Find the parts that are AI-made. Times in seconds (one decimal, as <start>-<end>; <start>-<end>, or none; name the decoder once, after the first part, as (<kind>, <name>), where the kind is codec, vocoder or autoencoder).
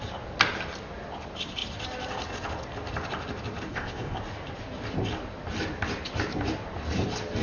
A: 3.7-4.2 (codec, ZipCodec)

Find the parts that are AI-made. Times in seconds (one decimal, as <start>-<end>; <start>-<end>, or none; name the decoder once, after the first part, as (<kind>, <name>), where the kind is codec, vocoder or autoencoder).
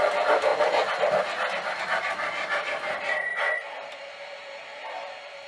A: 0.0-3.3 (vocoder, BigVGAN v2); 4.0-5.5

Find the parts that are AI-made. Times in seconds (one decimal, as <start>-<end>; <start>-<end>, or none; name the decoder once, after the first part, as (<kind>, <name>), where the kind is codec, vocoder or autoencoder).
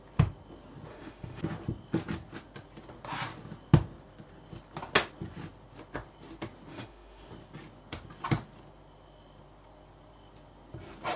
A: 0.9-1.4 (autoencoder, DAC-VAE); 6.7-7.3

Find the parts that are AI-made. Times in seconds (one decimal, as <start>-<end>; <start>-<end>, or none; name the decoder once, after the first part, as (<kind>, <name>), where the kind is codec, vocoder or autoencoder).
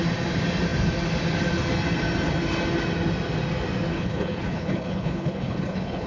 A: 3.9-6.1 (codec, HILCodec)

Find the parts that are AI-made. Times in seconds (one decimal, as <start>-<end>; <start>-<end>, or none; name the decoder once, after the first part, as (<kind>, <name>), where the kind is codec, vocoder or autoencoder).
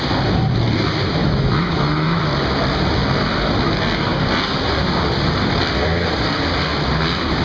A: 1.2-2.2 (autoencoder, DAC-VAE)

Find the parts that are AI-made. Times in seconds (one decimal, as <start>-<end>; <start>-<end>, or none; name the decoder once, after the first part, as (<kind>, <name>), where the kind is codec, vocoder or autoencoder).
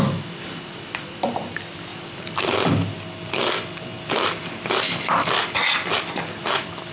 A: none